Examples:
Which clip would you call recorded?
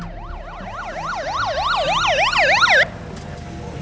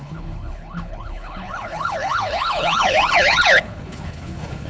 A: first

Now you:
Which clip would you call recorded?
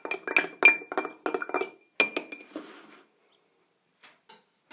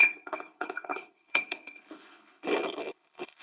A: first